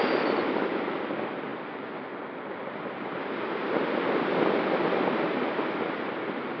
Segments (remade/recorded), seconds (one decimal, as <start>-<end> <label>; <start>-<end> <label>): 0.0-6.6 recorded